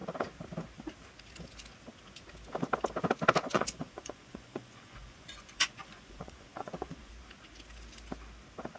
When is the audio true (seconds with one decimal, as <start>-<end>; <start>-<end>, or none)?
0.0-3.5; 7.1-8.8